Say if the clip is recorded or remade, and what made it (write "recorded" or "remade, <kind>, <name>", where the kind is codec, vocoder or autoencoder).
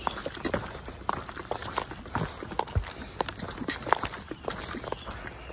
recorded